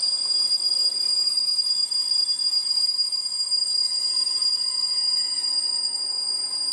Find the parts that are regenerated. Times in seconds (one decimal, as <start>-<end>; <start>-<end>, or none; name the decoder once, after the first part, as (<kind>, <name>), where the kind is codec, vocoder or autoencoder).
3.8-6.7 (vocoder, Vocos)